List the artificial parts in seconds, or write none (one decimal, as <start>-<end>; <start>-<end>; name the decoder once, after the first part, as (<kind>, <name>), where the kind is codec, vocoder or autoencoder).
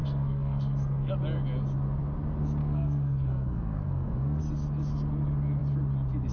0.0-1.1 (codec, SNAC); 2.6-4.4